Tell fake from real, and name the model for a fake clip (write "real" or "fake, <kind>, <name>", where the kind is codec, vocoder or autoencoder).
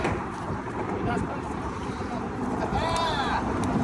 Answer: fake, vocoder, BigVGAN v2